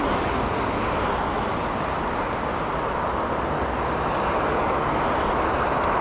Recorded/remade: recorded